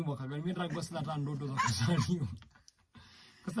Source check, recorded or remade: recorded